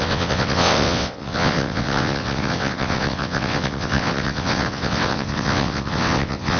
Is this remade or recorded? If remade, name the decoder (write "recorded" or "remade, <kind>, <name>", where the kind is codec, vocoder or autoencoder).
remade, vocoder, WaveNeXt